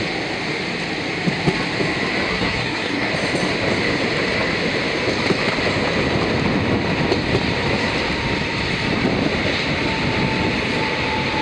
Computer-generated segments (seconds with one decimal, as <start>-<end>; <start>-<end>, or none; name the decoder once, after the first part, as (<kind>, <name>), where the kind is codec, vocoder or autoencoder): 2.3-3.1 (codec, SNAC)